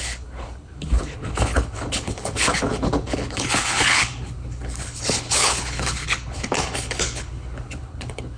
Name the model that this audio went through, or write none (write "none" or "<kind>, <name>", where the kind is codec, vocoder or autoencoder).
codec, HILCodec